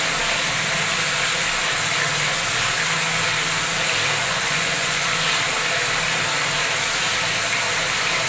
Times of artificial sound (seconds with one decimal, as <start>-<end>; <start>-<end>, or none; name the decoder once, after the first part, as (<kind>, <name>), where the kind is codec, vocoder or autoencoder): 4.2-5.0 (vocoder, Vocos)